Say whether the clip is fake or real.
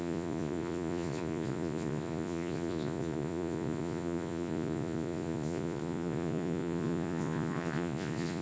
fake